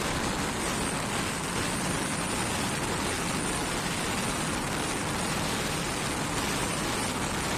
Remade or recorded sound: recorded